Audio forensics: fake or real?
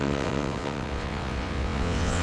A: fake